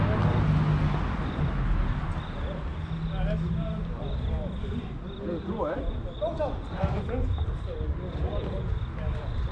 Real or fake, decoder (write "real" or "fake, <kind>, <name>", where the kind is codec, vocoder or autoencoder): real